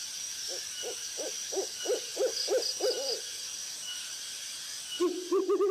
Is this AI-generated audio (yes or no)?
no